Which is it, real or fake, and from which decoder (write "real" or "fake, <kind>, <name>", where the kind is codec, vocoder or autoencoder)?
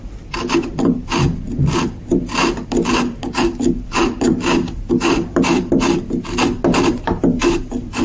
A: fake, vocoder, BigVGAN v2